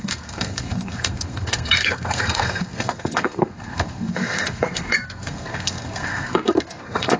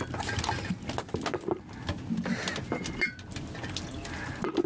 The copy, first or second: first